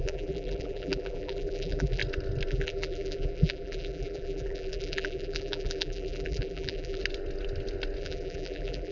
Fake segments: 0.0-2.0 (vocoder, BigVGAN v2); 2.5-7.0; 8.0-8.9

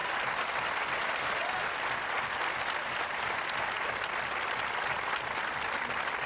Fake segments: none

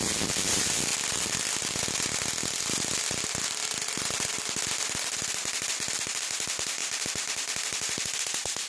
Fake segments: 0.0-8.7 (vocoder, BigVGAN v2)

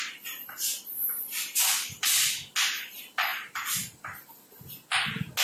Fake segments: 3.3-4.0 (vocoder, BigVGAN v2)

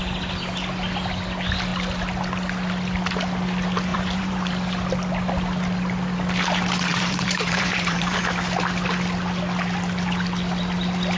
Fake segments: 3.9-4.5 (vocoder, BigVGAN v2); 6.9-8.2

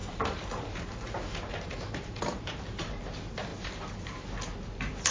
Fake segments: 0.0-2.4 (vocoder, BigVGAN v2)

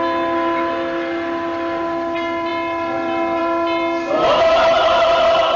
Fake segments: none

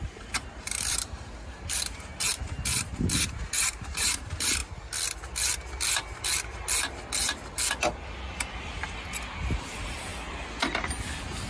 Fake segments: 0.0-4.6 (vocoder, BigVGAN v2); 9.6-10.1